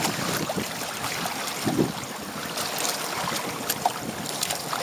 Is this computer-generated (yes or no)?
no